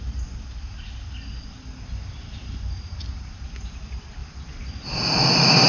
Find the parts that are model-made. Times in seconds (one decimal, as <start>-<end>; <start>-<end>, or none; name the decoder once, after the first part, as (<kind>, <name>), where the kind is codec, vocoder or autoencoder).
none